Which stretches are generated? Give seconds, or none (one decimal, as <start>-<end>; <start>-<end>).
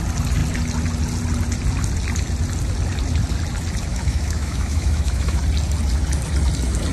3.9-5.4